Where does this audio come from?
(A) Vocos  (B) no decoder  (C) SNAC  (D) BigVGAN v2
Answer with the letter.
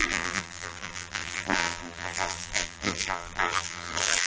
D